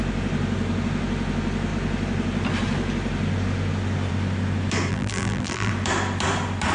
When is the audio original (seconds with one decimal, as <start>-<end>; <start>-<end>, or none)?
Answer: 0.0-4.9; 5.7-6.7